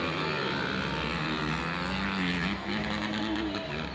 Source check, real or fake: real